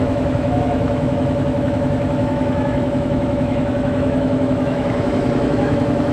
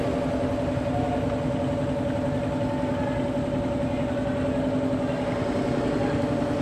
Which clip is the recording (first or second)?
second